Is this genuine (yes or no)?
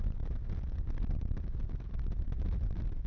yes